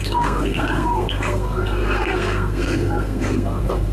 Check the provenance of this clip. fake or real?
fake